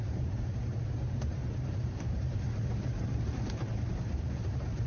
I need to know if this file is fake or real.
fake